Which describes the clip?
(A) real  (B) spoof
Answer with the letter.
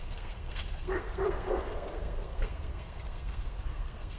B